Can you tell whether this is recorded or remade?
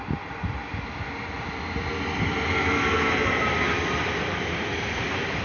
recorded